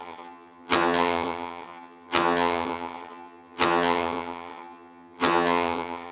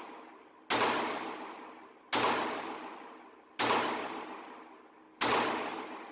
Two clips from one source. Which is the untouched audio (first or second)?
second